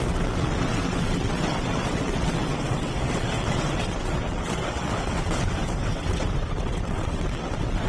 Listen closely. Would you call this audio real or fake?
fake